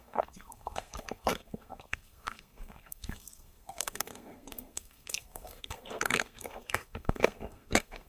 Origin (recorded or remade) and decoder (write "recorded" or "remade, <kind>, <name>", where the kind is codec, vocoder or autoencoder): remade, codec, SNAC